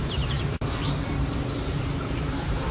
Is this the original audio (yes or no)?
no